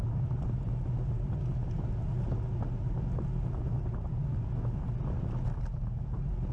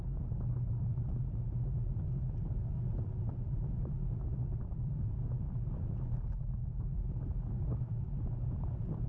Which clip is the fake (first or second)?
second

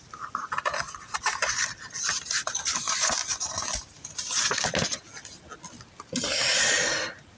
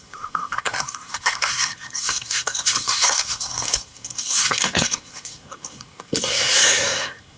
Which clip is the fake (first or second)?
second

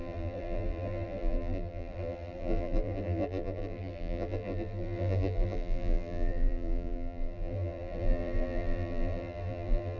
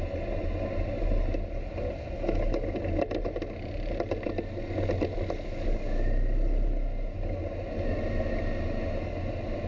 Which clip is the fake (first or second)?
first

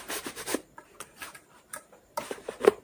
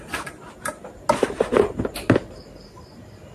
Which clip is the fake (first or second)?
first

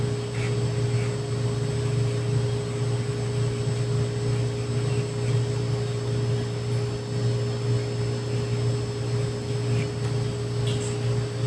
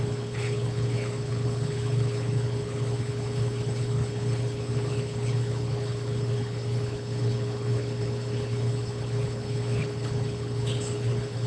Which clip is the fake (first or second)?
second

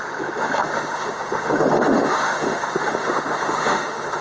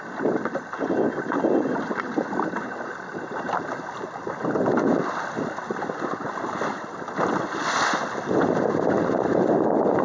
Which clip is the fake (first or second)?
first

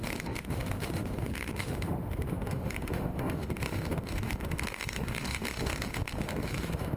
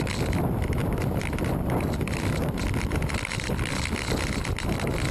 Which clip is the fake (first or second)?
first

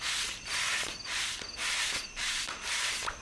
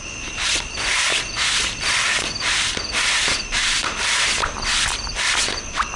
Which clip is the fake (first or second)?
second